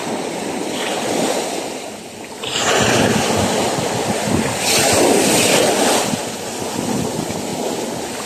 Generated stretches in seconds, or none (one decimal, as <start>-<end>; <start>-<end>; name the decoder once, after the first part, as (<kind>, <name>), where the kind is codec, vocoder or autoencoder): none